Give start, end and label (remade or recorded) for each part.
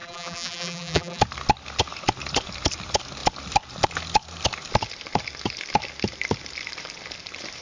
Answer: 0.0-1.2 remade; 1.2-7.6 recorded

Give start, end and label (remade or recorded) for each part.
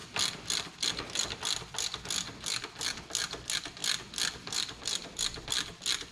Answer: 0.0-6.1 recorded